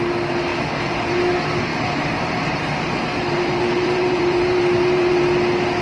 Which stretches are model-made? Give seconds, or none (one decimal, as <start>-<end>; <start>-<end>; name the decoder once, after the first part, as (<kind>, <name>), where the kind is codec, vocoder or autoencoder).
0.5-1.1 (vocoder, BigVGAN v2); 1.7-5.2